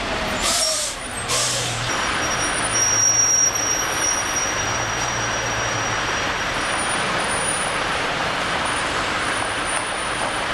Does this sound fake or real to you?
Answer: fake